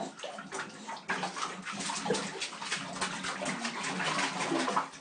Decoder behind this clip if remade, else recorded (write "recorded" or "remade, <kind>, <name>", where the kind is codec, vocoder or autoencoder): recorded